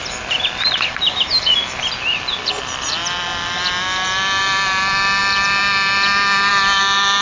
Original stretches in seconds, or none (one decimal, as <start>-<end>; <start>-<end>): 0.5-1.3; 1.8-7.2